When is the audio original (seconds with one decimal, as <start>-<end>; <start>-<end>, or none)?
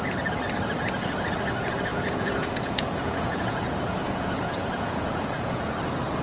0.0-1.9; 5.6-6.2